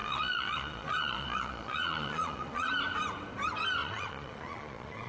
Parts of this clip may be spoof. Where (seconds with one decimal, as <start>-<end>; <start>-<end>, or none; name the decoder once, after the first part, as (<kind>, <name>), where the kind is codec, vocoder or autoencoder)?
0.0-2.7 (vocoder, Vocos); 3.8-5.1